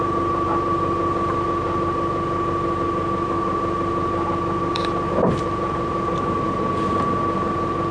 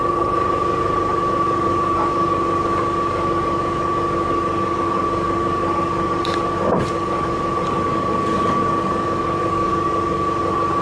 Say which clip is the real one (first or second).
first